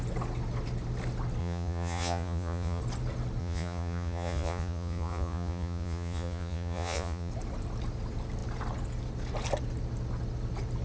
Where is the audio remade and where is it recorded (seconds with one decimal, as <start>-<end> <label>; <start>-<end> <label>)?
0.0-1.4 recorded; 1.4-2.8 remade; 2.8-3.4 recorded; 3.4-7.3 remade; 7.3-10.8 recorded